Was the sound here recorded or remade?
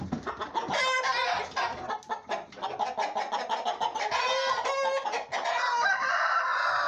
recorded